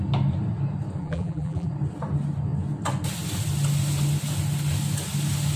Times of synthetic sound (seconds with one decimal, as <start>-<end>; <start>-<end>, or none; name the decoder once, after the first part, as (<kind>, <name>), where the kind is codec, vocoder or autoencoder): 1.0-1.7 (vocoder, BigVGAN v2)

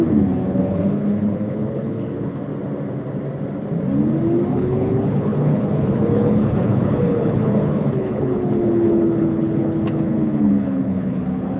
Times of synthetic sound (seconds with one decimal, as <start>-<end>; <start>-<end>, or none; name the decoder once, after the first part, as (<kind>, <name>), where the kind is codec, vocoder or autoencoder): 0.0-2.5 (codec, HILCodec); 4.5-11.6